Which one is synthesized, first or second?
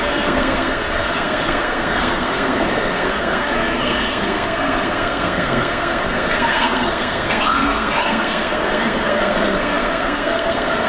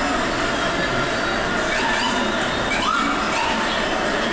first